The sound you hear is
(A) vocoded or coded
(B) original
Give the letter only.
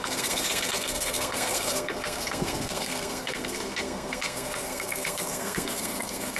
A